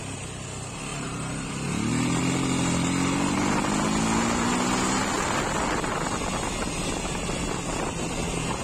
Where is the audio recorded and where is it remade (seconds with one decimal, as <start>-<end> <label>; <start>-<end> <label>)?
0.0-0.9 recorded; 0.9-1.5 remade; 1.5-8.6 recorded